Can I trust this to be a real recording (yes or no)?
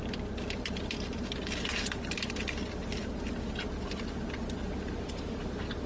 yes